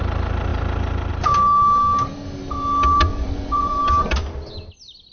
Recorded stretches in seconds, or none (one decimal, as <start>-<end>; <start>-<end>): 0.0-3.1; 3.8-5.1